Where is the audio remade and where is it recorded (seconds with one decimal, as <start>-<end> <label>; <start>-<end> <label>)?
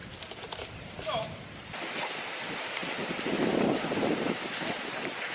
0.0-5.3 remade